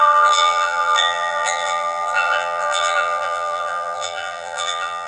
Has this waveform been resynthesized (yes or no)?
yes